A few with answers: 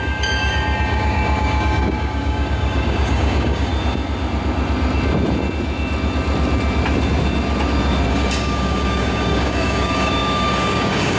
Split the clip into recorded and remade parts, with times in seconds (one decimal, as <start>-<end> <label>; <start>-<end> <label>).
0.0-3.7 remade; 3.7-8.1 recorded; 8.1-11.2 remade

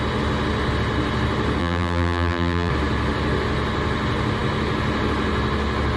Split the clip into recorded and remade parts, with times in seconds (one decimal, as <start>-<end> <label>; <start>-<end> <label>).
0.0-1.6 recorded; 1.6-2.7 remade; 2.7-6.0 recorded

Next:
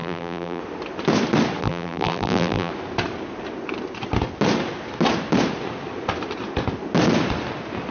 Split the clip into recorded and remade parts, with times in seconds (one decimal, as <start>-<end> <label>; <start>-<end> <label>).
0.0-0.6 remade; 0.6-1.6 recorded; 1.6-2.7 remade; 2.7-7.9 recorded

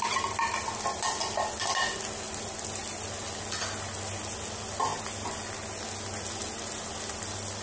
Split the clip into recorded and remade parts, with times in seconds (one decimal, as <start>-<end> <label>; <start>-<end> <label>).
0.0-7.6 recorded

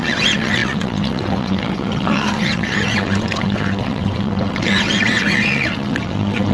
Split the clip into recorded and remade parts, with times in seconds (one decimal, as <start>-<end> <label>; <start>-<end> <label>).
0.0-6.5 remade

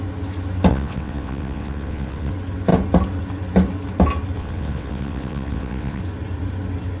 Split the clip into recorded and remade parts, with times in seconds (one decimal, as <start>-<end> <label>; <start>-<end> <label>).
0.0-0.7 recorded; 0.7-2.3 remade; 2.3-4.4 recorded; 4.4-6.0 remade; 6.0-7.0 recorded

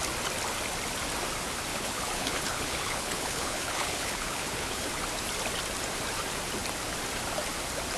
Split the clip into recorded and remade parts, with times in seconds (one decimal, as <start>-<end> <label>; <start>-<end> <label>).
0.0-1.7 recorded; 1.7-4.9 remade; 4.9-8.0 recorded

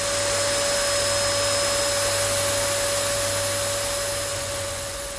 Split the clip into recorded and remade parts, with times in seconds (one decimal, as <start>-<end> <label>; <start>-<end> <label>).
0.0-4.3 recorded; 4.3-5.2 remade